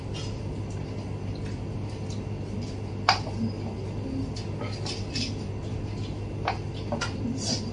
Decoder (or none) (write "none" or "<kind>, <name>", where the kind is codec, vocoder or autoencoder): none